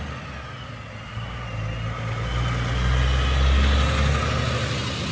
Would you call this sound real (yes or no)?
yes